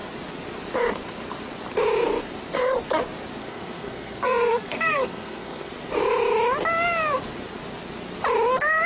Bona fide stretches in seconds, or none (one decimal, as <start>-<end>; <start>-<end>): 0.0-3.4; 5.7-8.9